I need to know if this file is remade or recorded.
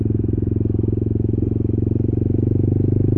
recorded